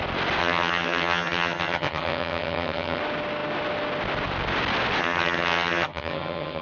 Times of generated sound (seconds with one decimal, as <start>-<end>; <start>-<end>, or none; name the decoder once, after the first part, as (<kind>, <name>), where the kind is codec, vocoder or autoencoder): 0.4-3.0 (vocoder, HiFi-GAN); 5.0-6.6